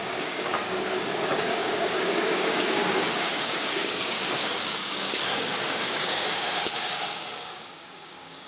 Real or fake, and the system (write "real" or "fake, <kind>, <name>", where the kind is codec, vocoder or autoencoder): fake, codec, DAC